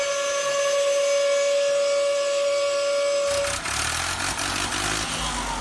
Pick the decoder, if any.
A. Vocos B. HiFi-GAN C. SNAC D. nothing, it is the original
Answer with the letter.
D